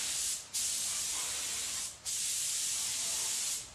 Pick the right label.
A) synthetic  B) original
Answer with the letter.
B